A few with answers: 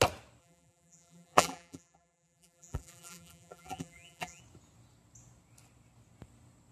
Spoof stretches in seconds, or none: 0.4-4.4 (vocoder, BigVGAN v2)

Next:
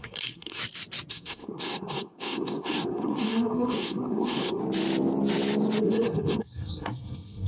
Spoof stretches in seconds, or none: 0.0-0.6 (codec, SNAC); 1.1-4.6; 5.8-7.5

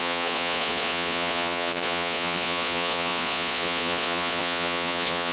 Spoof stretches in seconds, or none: 0.0-5.3 (vocoder, Vocos)

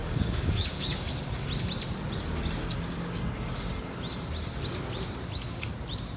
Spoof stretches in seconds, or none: 0.0-1.2 (codec, DAC)

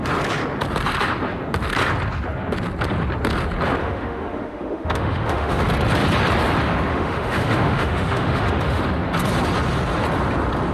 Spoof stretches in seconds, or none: 3.8-5.6 (autoencoder, DAC-VAE); 6.9-8.8

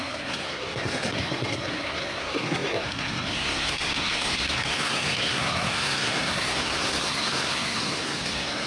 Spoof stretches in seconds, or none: 0.0-8.7 (codec, SNAC)

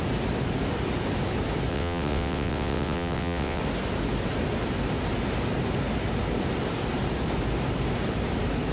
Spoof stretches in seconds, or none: 1.7-3.6 (vocoder, WaveNeXt)

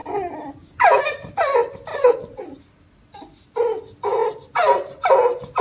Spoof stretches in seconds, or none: 1.9-2.6 (vocoder, Vocos)